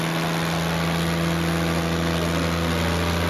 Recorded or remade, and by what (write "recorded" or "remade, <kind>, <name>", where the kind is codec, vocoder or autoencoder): recorded